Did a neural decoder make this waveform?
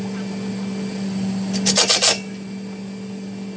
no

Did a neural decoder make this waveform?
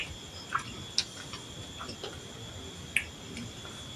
no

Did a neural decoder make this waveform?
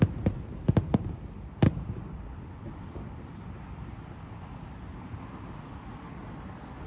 no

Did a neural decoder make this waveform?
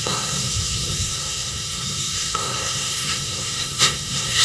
yes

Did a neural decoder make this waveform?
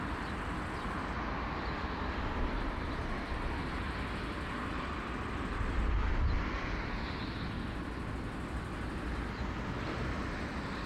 no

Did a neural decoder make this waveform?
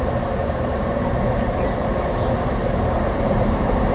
yes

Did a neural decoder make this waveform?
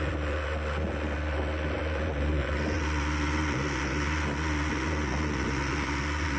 yes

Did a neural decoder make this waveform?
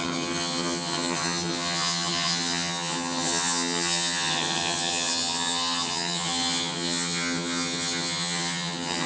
yes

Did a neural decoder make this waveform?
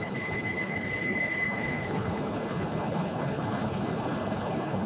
yes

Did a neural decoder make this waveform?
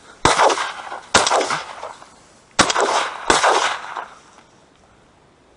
no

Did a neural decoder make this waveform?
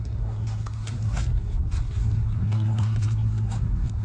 yes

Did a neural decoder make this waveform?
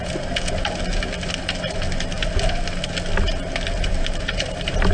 no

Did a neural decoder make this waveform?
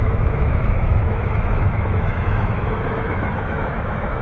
yes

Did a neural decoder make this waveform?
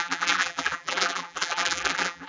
yes